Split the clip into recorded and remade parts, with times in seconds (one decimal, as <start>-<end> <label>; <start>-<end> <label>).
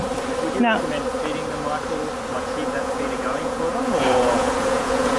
0.0-2.3 recorded; 2.3-5.2 remade